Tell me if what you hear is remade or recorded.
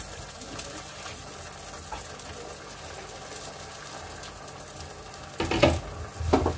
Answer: recorded